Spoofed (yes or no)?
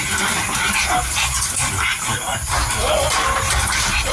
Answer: no